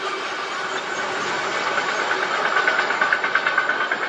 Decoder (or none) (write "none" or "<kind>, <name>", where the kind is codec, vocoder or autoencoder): none